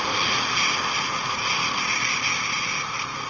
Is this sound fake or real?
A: real